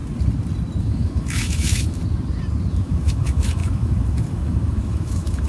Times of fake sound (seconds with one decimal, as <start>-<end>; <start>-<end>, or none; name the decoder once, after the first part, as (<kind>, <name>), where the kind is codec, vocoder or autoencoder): 0.8-2.0 (autoencoder, DAC-VAE); 2.7-5.5